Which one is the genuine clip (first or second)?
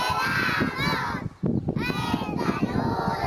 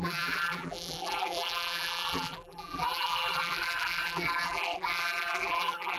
first